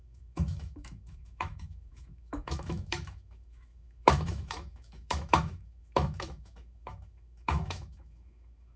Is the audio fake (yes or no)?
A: yes